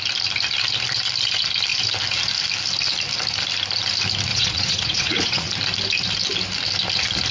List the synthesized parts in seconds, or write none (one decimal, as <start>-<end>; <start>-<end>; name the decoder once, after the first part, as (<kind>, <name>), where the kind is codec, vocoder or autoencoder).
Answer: 4.3-5.5 (vocoder, Vocos)